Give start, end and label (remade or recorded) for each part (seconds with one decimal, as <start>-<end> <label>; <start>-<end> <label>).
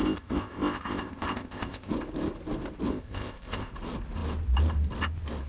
0.0-1.9 remade; 1.9-2.9 recorded; 2.9-3.7 remade; 3.7-5.5 recorded